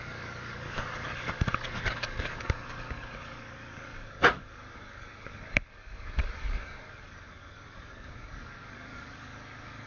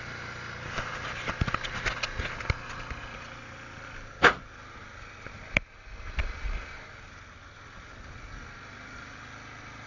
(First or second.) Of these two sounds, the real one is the second